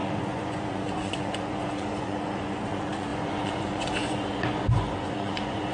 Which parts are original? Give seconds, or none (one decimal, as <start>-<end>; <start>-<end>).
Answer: none